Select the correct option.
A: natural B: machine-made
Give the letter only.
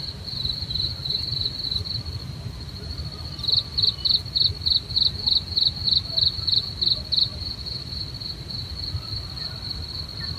A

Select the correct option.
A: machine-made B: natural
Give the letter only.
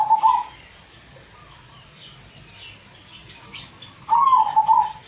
A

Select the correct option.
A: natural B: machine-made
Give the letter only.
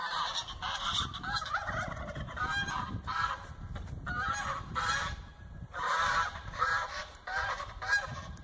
B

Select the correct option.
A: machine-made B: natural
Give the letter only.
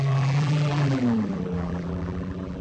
A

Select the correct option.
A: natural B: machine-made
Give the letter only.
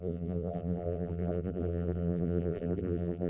B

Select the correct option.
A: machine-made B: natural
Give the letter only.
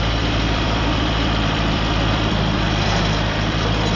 A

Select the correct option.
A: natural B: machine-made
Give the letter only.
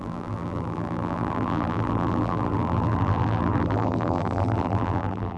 B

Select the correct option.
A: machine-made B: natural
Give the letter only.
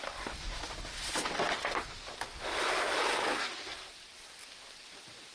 B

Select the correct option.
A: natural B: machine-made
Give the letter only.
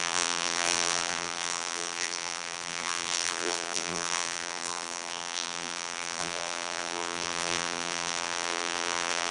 B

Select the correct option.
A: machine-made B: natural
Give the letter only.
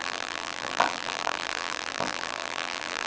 A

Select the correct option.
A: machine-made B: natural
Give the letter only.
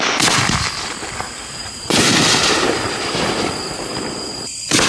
A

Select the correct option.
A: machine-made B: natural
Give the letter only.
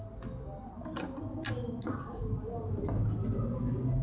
B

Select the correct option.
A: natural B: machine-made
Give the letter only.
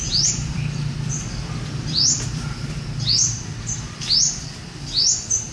B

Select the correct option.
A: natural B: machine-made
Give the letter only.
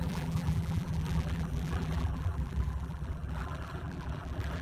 B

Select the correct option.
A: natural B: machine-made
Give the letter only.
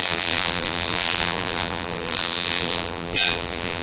B